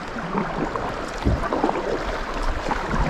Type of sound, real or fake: real